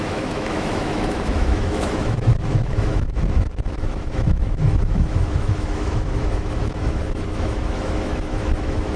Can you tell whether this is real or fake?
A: fake